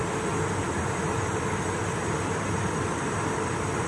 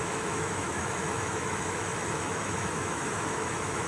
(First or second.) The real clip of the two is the first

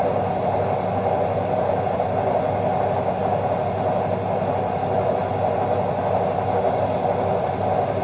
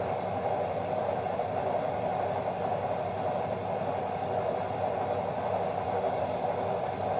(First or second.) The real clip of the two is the first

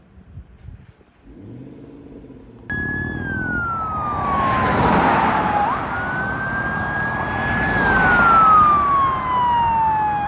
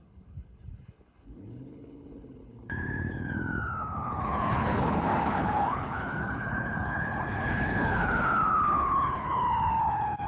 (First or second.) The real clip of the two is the first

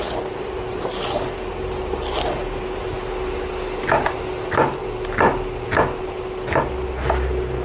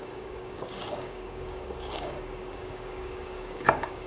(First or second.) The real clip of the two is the first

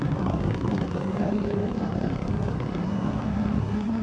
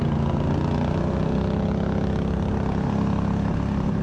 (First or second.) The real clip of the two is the second